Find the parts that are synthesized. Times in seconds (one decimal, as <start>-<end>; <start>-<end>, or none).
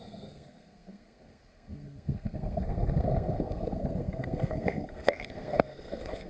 0.0-6.3